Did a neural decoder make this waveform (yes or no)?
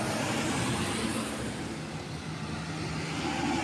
no